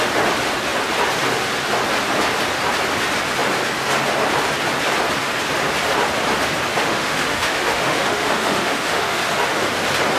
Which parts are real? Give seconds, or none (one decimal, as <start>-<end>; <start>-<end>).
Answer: 0.0-6.8; 9.2-10.2

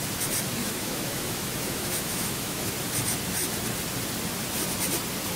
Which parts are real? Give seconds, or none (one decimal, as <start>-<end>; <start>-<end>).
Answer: 0.0-0.6; 2.7-5.4

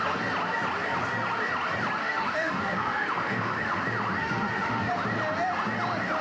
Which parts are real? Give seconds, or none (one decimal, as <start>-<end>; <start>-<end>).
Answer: 0.0-2.0; 3.8-4.2; 4.9-6.2

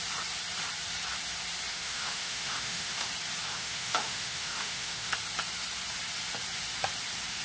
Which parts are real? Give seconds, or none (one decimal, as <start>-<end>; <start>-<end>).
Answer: 0.0-1.7; 3.1-3.5; 5.1-7.4

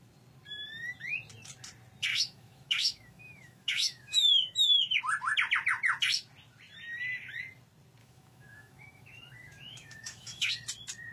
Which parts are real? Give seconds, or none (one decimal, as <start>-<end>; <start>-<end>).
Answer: 0.0-2.1; 5.0-8.0; 10.5-11.1

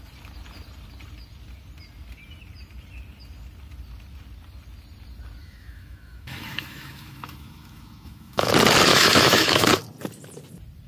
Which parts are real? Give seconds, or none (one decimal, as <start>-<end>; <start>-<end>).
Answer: 0.0-5.4; 8.5-8.9; 9.8-10.9

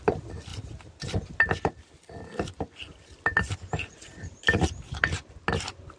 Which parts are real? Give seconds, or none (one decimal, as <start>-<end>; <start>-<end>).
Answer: 0.0-6.0

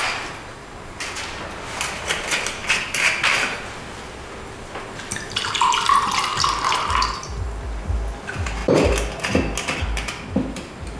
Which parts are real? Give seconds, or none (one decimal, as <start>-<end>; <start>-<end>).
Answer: 0.0-11.0